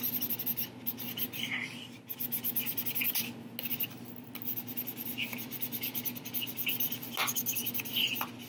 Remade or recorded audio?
recorded